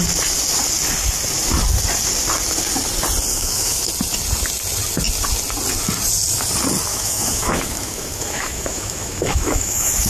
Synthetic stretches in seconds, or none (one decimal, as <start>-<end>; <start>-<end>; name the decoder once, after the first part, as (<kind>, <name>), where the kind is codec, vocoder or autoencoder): 3.3-3.9 (autoencoder, DAC-VAE); 6.9-10.1